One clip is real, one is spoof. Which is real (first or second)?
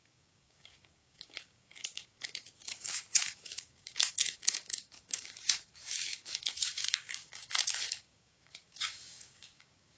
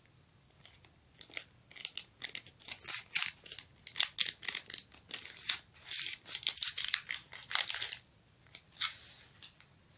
second